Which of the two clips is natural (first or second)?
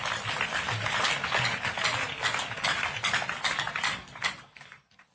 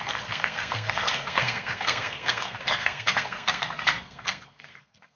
first